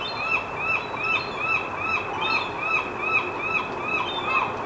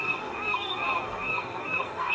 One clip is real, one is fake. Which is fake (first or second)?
second